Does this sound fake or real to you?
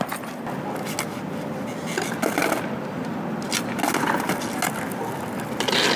real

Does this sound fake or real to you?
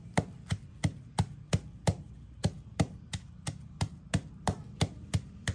fake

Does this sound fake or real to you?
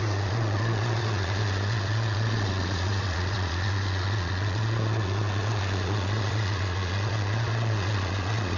fake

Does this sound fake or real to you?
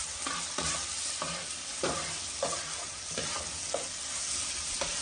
real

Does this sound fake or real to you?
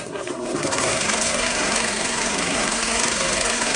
fake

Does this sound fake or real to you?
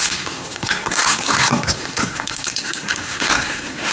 fake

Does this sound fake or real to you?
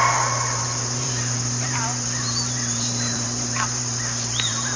fake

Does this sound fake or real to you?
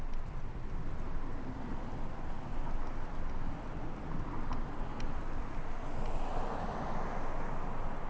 real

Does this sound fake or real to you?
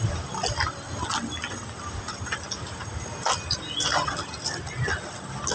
real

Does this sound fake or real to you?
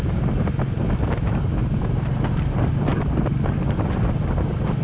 fake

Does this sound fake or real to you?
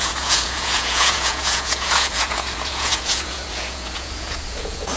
fake